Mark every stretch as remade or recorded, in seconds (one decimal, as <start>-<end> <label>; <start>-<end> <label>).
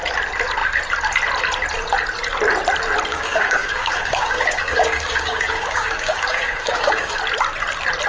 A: 0.0-3.1 recorded; 3.1-7.2 remade; 7.2-8.1 recorded